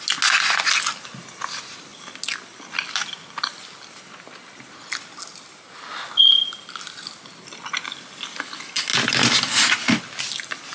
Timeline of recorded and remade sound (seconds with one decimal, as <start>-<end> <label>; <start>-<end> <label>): 0.0-10.7 recorded